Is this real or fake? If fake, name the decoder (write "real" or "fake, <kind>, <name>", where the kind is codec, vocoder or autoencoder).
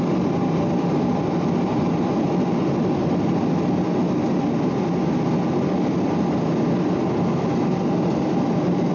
real